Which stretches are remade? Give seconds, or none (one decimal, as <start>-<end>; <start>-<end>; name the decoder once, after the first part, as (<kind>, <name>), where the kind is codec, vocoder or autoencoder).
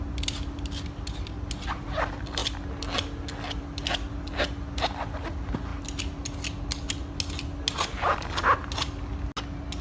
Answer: none